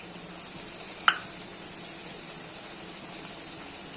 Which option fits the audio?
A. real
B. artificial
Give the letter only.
A